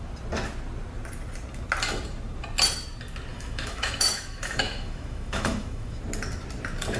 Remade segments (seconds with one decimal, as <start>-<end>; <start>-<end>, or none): 3.3-6.0